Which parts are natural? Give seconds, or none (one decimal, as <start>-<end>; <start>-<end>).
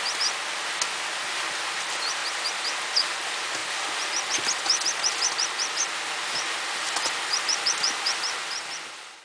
0.0-9.2